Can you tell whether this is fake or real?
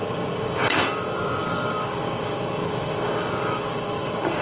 fake